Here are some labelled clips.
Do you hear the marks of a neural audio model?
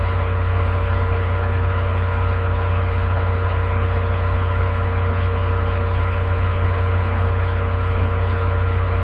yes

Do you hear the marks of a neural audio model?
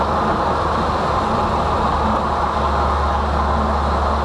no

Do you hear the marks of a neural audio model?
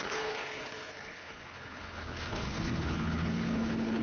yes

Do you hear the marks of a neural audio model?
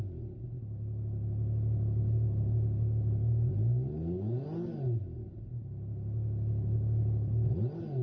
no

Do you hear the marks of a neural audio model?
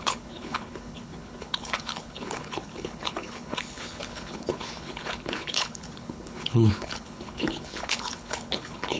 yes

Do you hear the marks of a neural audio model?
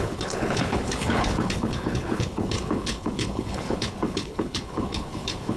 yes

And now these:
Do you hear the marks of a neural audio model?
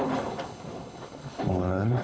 yes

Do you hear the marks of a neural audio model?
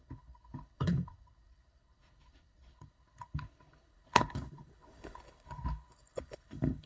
yes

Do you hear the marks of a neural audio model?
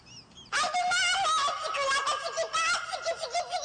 no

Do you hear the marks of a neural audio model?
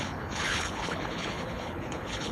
yes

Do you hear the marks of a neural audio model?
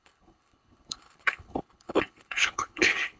yes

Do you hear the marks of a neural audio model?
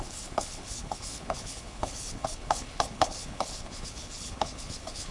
yes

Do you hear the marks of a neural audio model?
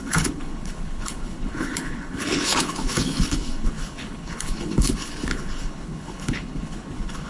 yes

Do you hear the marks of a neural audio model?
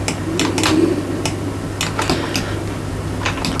no